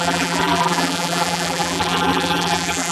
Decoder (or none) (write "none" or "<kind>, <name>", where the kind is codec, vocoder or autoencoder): vocoder, BigVGAN v2